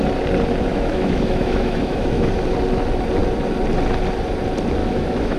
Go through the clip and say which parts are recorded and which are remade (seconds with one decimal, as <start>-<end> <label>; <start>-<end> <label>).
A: 0.0-0.7 recorded; 0.7-2.3 remade; 2.3-4.8 recorded; 4.8-5.4 remade